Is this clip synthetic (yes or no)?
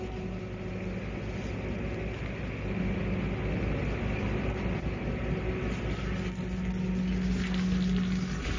no